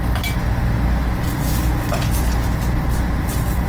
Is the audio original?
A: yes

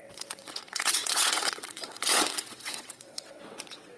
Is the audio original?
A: no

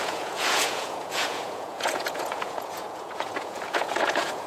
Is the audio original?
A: no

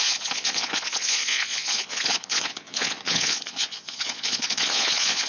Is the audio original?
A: no